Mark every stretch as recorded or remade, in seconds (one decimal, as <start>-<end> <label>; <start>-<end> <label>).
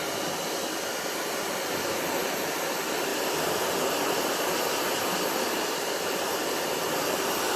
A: 0.0-7.6 recorded